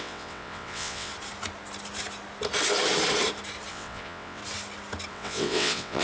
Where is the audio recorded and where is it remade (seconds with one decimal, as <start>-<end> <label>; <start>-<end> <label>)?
0.0-1.1 remade; 1.1-3.7 recorded; 3.7-4.4 remade; 4.4-5.1 recorded; 5.1-6.0 remade